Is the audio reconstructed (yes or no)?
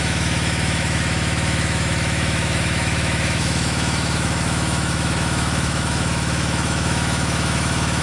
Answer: yes